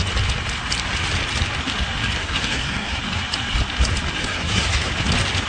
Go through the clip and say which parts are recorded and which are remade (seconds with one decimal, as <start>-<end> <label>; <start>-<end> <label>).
0.0-2.2 recorded; 2.2-3.0 remade; 3.0-4.2 recorded; 4.2-4.9 remade; 4.9-5.5 recorded